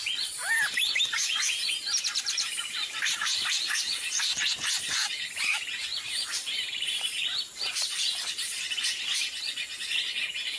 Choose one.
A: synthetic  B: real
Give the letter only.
A